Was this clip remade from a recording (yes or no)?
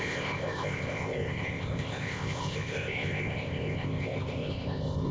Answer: yes